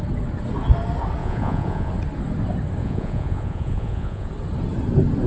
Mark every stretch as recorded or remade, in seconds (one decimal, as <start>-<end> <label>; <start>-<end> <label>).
0.0-1.2 recorded; 1.2-1.9 remade; 1.9-2.8 recorded; 2.8-4.3 remade; 4.3-5.3 recorded